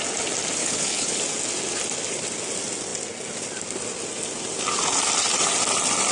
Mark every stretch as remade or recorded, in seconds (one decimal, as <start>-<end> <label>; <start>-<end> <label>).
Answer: 0.0-0.6 recorded; 0.6-1.2 remade; 1.2-6.1 recorded